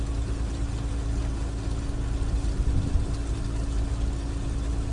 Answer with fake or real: real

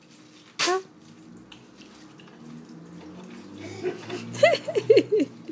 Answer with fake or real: real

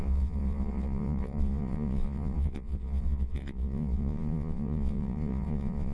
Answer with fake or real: fake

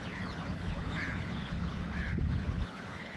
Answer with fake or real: fake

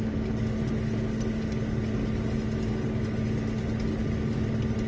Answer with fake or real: real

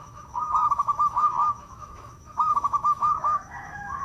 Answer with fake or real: fake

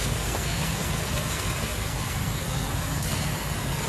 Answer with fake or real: fake